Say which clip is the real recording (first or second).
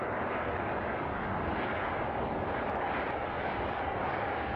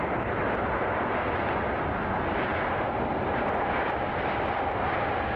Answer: second